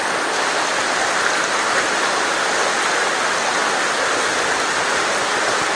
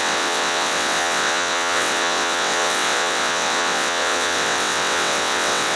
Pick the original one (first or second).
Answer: first